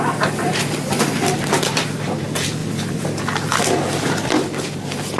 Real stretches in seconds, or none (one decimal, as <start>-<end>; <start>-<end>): none